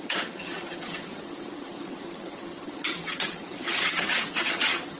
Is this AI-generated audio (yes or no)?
yes